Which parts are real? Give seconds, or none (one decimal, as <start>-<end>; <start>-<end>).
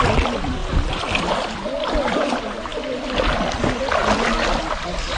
0.0-5.2